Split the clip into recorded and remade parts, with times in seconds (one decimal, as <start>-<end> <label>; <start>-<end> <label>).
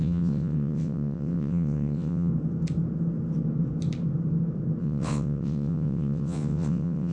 0.0-2.3 remade; 2.3-4.8 recorded; 4.8-7.1 remade